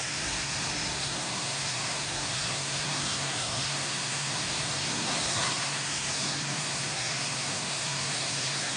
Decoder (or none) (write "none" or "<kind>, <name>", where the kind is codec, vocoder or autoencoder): codec, SNAC